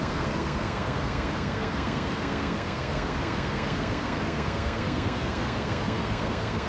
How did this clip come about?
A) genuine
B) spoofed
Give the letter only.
B